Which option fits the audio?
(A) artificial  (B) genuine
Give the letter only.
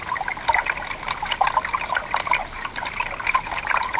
B